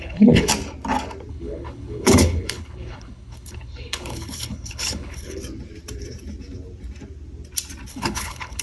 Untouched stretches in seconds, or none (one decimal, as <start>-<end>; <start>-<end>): 0.5-1.3; 5.4-7.9